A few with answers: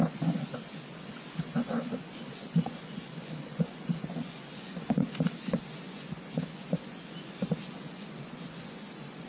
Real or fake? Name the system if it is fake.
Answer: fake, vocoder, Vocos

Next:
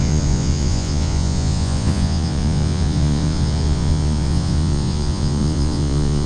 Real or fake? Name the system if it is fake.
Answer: fake, vocoder, Vocos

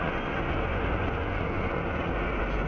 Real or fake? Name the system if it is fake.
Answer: fake, vocoder, Vocos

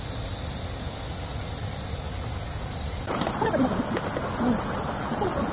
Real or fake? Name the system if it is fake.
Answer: real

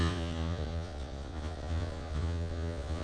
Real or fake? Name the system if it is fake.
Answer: fake, vocoder, Vocos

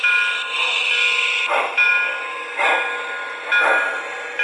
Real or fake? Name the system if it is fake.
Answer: real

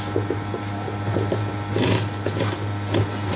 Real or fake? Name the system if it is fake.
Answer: real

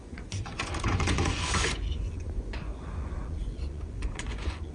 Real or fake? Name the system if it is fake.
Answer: fake, vocoder, Vocos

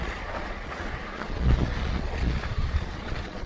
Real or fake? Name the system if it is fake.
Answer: fake, vocoder, Vocos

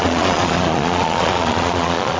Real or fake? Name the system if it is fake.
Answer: fake, vocoder, Vocos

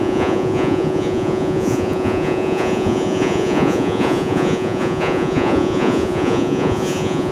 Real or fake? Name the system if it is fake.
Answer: fake, vocoder, Vocos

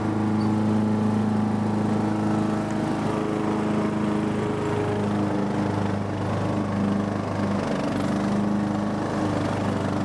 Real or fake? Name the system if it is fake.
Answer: real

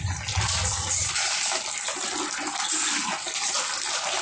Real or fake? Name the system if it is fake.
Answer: real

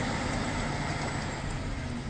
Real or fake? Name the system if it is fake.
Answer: real